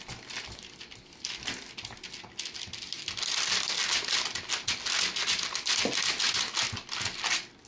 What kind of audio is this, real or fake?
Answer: real